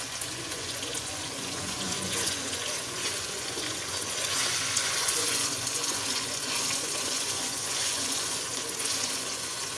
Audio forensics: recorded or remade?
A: remade